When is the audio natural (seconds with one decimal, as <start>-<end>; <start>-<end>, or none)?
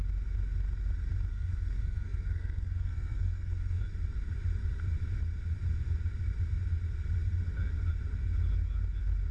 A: 0.0-1.3; 3.8-9.3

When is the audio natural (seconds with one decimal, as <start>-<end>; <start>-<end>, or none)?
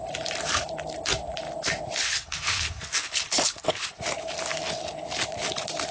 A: 0.0-2.0; 4.0-5.9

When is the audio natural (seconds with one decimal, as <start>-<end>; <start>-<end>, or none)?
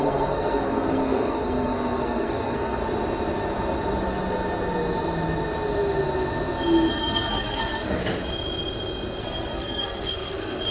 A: 2.8-6.9; 8.0-9.2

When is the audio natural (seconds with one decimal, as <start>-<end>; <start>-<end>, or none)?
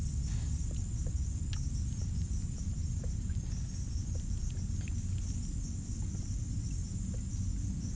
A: 0.0-2.4; 3.4-6.8; 7.3-8.0